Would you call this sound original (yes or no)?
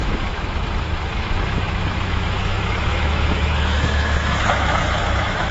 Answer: no